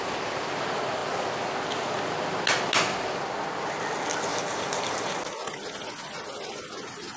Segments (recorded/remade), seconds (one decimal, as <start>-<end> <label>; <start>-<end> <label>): 0.0-4.3 recorded; 4.3-5.2 remade; 5.2-7.2 recorded